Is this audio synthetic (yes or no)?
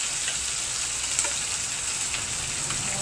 no